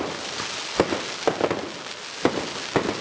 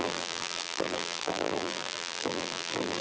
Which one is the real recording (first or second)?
first